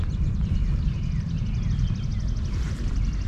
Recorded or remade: remade